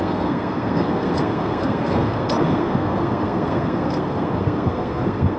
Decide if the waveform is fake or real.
fake